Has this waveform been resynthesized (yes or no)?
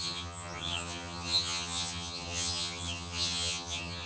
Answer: yes